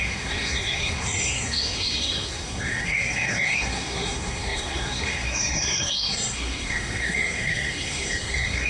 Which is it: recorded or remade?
remade